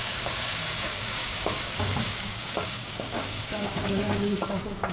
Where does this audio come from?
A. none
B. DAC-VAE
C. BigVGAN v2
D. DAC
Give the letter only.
D